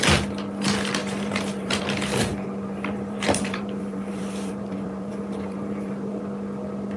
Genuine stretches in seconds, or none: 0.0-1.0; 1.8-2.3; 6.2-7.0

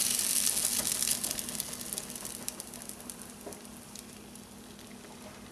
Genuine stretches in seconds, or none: 0.0-5.5

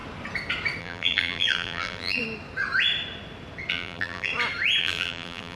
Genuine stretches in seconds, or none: 0.0-0.8; 2.2-3.7; 4.3-4.8

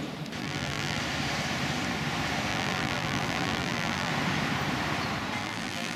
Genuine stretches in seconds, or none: 0.0-0.4; 1.0-2.5; 4.1-5.4